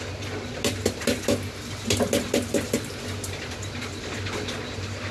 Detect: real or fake real